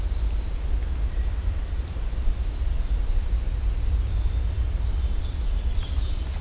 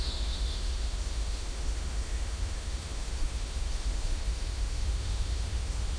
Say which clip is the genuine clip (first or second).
first